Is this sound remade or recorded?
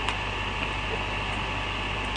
recorded